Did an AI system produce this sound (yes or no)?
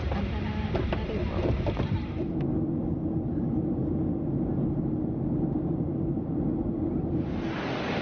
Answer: no